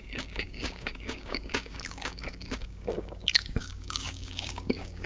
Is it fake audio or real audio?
fake